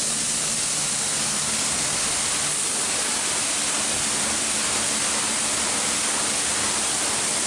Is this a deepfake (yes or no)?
no